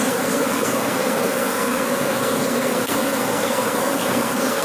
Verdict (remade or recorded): remade